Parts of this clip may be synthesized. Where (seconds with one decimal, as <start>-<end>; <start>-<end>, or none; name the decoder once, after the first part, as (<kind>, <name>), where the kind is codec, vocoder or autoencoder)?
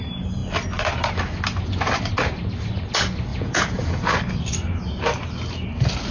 3.3-4.2 (vocoder, Vocos)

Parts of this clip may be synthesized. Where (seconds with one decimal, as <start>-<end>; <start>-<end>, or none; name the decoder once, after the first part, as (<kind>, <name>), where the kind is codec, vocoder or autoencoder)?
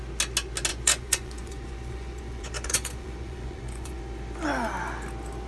0.7-4.0 (vocoder, Vocos)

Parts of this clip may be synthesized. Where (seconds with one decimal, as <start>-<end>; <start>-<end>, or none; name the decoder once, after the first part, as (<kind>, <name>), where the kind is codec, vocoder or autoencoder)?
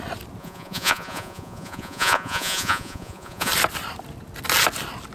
0.4-3.5 (vocoder, Vocos)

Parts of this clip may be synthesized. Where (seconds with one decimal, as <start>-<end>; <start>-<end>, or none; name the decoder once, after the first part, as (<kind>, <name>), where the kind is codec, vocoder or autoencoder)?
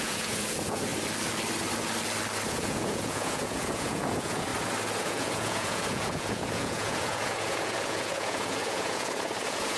0.0-0.9 (vocoder, Vocos); 2.5-4.5; 5.0-9.8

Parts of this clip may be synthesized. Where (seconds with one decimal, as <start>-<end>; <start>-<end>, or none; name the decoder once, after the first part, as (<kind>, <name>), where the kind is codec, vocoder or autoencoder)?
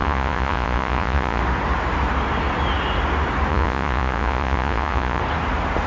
0.0-1.4 (vocoder, Vocos); 3.5-5.2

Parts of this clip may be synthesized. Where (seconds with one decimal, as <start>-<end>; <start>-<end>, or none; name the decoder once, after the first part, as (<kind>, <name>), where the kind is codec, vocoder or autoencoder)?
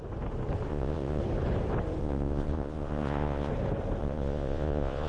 0.7-1.2 (vocoder, Vocos); 2.0-3.5; 4.0-5.1